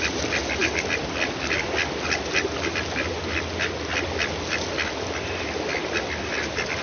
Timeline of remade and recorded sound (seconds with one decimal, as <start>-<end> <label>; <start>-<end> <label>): 0.0-6.8 recorded